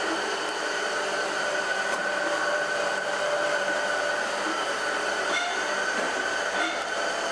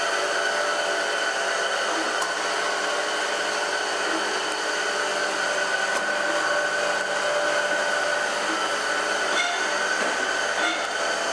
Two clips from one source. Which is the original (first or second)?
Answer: second